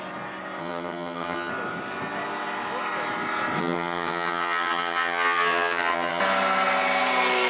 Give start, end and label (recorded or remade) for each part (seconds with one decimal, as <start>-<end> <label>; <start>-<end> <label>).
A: 0.0-0.6 recorded; 0.6-1.5 remade; 1.5-3.6 recorded; 3.6-6.2 remade; 6.2-7.5 recorded

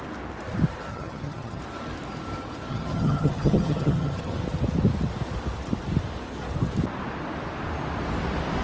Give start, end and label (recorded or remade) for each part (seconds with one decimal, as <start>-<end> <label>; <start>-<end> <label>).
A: 0.0-0.9 recorded; 0.9-1.6 remade; 1.6-2.7 recorded; 2.7-4.4 remade; 4.4-8.6 recorded